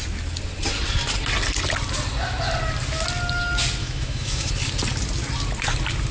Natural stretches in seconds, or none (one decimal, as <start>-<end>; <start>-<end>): 0.0-3.8; 4.5-6.1